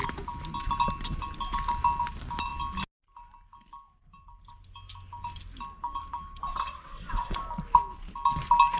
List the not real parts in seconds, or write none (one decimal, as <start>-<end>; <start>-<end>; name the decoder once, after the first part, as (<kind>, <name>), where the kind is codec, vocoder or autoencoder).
6.5-7.4 (vocoder, WaveNeXt)